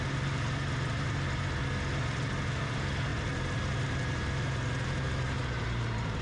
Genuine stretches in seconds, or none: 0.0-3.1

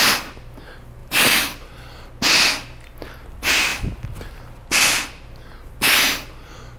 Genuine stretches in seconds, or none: 0.0-1.0; 2.1-6.8

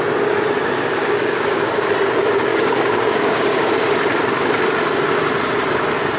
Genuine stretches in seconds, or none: 0.0-1.0; 1.9-2.5; 3.7-6.2

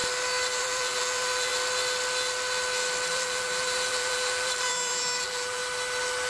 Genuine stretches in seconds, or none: 0.0-0.6; 1.5-3.1; 5.6-6.3

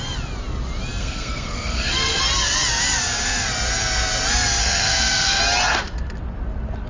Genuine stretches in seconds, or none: 0.0-1.0; 2.2-4.6; 5.4-6.9

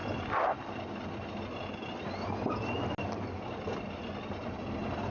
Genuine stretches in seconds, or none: 0.0-5.1

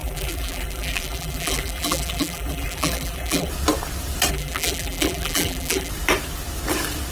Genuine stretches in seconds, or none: 3.5-4.3; 5.9-7.1

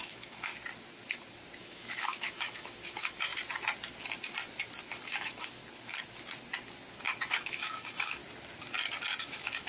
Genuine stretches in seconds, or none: 0.5-1.6; 3.3-5.0; 5.6-7.3; 8.2-9.2